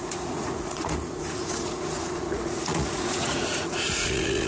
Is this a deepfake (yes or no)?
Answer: yes